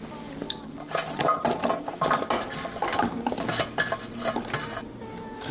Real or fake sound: real